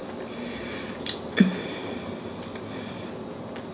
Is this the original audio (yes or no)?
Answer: yes